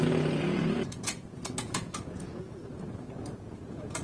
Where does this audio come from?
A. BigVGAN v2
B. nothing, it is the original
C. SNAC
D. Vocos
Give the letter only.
D